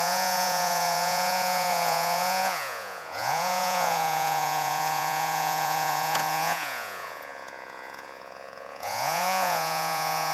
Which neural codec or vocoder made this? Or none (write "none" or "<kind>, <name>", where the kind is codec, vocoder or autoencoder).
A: vocoder, Vocos